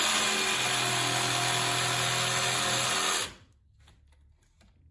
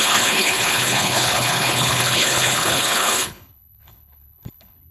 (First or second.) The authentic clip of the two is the first